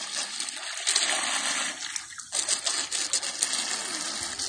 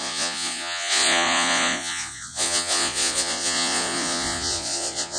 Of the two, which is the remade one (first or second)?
second